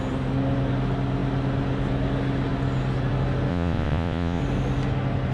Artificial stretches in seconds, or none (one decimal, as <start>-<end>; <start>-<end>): 3.5-4.4